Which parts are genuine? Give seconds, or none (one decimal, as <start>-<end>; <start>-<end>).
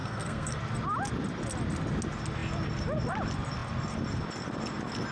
0.6-5.1